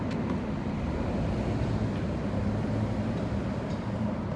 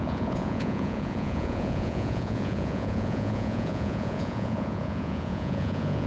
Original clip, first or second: first